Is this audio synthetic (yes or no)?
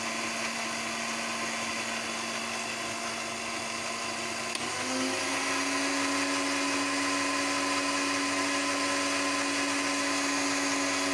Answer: no